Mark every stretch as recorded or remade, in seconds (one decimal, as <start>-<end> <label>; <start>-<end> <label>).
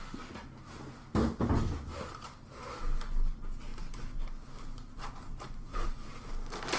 0.0-3.7 recorded; 3.7-6.3 remade; 6.3-6.8 recorded